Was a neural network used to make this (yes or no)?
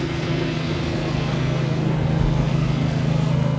yes